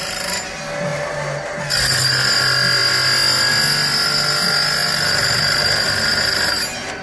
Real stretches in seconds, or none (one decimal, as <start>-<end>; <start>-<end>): 0.0-0.9; 1.6-7.0